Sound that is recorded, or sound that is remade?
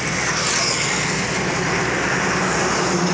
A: recorded